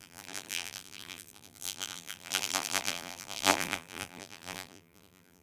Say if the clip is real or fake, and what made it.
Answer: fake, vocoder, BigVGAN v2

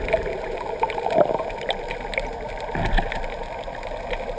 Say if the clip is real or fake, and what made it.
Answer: real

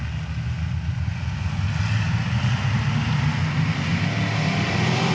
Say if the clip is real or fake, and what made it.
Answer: real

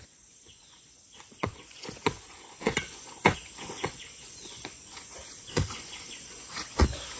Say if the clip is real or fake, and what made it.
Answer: fake, vocoder, Vocos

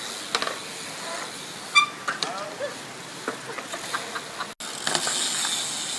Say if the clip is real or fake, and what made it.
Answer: real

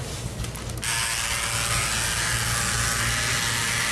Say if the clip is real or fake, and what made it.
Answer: real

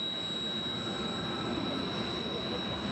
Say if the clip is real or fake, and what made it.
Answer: real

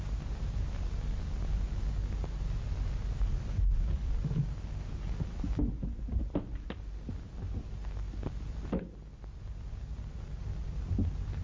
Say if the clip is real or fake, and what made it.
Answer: real